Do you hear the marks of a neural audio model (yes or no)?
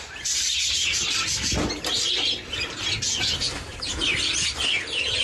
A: no